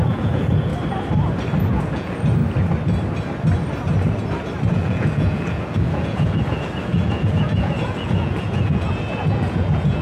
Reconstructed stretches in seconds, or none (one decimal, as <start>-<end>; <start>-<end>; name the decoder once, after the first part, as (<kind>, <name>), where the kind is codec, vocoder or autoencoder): 0.0-0.7 (vocoder, Vocos); 1.7-2.4; 4.7-10.0